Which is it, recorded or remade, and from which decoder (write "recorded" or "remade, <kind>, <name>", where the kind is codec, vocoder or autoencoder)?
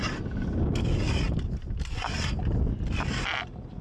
recorded